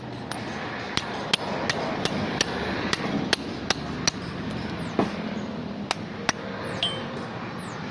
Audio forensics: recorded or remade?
recorded